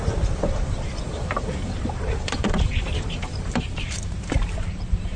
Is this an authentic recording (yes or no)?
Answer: no